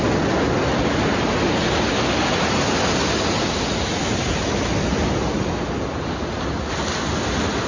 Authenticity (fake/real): real